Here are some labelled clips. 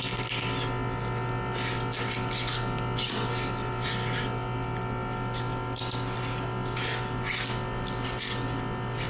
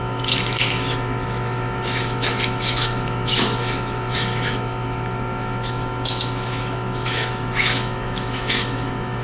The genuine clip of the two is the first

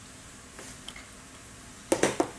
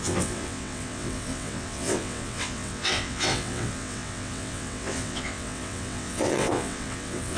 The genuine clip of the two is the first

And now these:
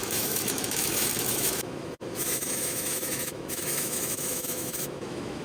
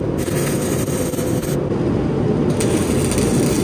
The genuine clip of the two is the second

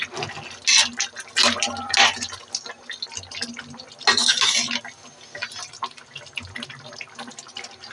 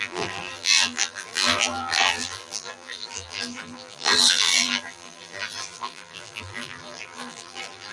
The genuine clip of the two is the first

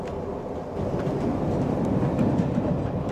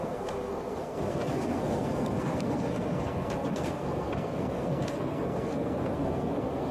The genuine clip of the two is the first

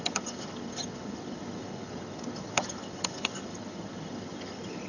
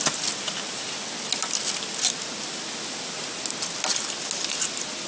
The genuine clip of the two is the second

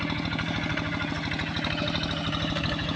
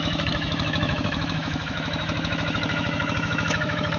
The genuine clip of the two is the first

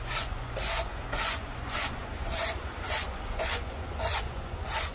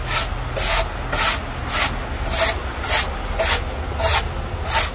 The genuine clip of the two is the second